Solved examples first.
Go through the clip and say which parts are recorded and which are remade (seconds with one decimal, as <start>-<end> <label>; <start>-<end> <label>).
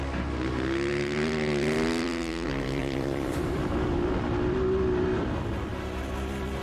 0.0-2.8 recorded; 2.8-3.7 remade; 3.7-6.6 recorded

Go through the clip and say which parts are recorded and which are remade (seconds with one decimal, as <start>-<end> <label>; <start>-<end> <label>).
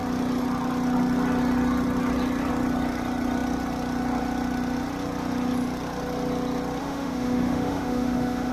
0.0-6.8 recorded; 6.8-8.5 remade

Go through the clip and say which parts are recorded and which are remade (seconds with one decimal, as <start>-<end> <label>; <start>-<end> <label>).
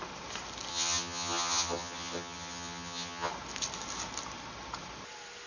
0.0-0.7 recorded; 0.7-3.3 remade; 3.3-5.5 recorded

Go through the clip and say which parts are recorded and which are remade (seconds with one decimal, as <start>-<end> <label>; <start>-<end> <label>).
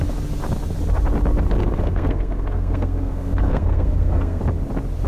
0.0-1.6 recorded; 1.6-4.4 remade; 4.4-5.1 recorded